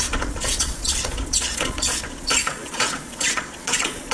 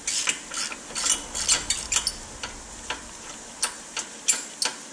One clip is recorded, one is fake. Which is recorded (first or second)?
second